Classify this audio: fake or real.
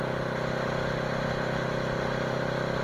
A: real